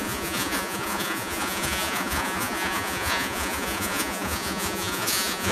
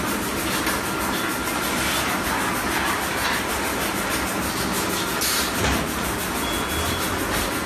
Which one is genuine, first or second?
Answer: second